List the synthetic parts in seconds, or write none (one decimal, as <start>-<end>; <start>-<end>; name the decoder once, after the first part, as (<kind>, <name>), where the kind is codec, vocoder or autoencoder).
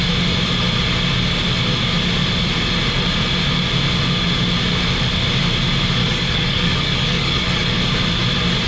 6.0-7.8 (codec, DAC)